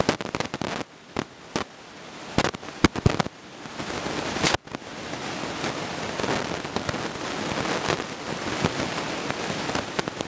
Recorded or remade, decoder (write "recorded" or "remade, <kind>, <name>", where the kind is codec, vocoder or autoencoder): recorded